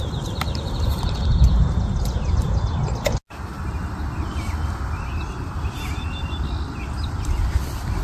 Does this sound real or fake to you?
real